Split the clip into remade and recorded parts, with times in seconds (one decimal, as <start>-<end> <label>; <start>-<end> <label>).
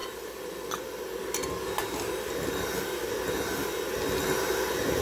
0.0-5.0 recorded